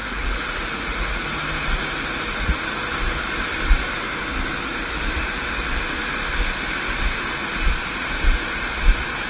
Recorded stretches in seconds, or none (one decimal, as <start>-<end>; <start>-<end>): 1.2-9.3